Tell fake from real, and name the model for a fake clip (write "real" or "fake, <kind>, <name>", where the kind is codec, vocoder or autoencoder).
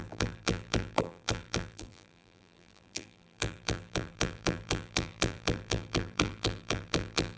fake, vocoder, BigVGAN v2